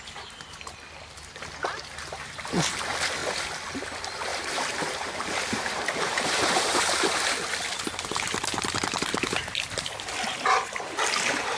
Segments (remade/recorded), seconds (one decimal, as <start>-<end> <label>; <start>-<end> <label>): 0.0-4.3 recorded; 4.3-6.8 remade; 6.8-9.1 recorded; 9.1-10.0 remade; 10.0-11.6 recorded